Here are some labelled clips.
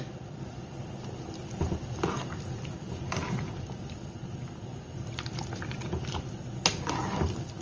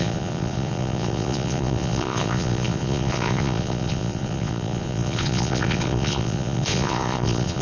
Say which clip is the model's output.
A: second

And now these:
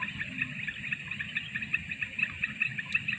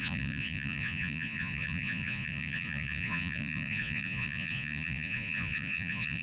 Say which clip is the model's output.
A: second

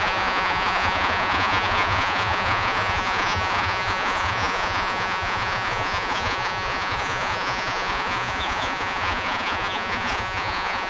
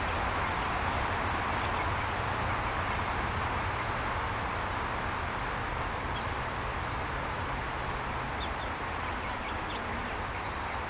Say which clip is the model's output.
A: first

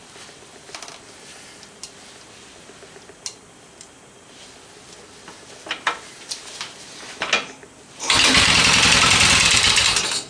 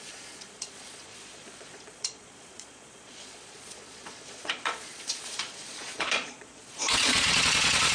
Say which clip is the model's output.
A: second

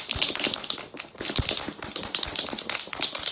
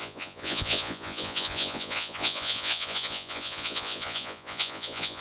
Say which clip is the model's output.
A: second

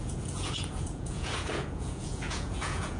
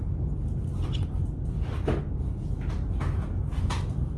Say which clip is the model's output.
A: first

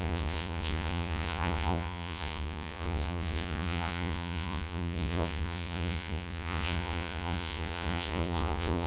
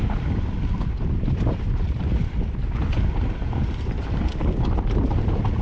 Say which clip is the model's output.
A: first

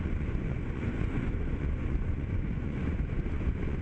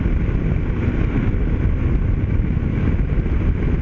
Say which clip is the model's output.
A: first